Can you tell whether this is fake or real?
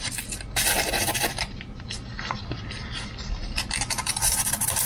fake